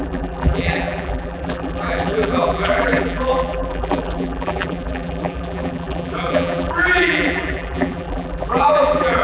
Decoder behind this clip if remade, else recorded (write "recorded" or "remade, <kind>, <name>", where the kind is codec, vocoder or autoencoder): remade, vocoder, BigVGAN v2